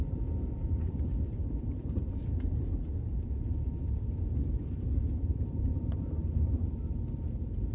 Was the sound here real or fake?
fake